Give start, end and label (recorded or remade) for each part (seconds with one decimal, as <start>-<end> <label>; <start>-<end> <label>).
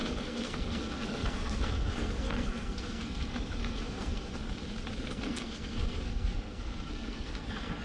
0.0-4.4 remade; 4.4-5.0 recorded; 5.0-7.8 remade